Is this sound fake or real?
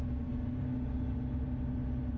real